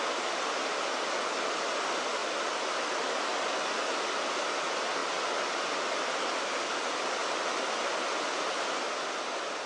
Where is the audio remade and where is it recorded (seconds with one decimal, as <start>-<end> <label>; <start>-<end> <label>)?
0.0-2.2 recorded; 2.2-3.2 remade; 3.2-7.2 recorded; 7.2-8.8 remade; 8.8-9.7 recorded